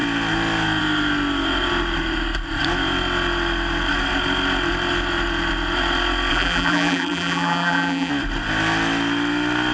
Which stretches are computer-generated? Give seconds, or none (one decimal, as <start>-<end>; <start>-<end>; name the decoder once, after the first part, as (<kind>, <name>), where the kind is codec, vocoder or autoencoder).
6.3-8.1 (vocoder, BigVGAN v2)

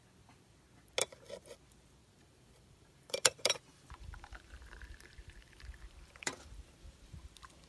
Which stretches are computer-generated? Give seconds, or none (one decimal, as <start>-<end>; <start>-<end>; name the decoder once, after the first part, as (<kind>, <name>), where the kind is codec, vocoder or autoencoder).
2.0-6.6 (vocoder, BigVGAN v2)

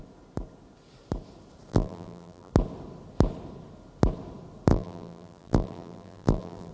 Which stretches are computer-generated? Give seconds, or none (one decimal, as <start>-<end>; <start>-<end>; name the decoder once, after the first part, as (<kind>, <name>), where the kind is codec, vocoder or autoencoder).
1.7-2.5 (vocoder, BigVGAN v2); 4.7-6.7

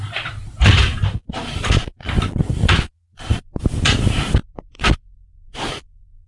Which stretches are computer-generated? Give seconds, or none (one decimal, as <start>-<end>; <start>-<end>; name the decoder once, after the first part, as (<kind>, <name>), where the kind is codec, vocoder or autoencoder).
3.3-6.3 (vocoder, BigVGAN v2)

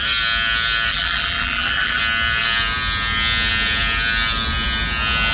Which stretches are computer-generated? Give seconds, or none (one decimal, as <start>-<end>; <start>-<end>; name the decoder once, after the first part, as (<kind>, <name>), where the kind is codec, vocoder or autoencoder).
0.9-2.0 (vocoder, BigVGAN v2)

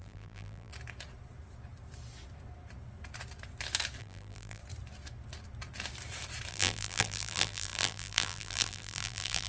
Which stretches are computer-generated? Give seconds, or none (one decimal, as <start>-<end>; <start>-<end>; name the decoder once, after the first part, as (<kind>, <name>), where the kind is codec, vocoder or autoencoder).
0.0-0.7 (vocoder, BigVGAN v2); 4.0-4.6; 6.5-9.5